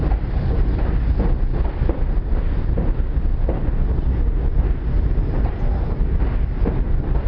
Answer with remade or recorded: recorded